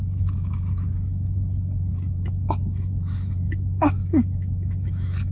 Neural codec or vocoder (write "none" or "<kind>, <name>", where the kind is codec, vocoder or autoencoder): autoencoder, DAC-VAE